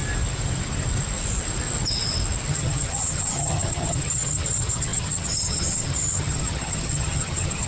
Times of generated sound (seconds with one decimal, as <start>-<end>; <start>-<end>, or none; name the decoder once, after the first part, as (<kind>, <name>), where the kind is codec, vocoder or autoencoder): 2.5-7.7 (vocoder, HiFi-GAN)